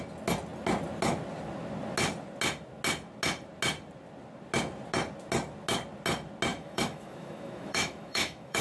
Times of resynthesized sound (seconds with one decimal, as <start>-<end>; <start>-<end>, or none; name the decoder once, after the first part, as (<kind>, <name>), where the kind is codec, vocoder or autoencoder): 6.5-8.6 (autoencoder, DAC-VAE)